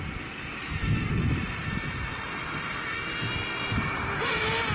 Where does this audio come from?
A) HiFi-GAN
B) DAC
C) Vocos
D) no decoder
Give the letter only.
D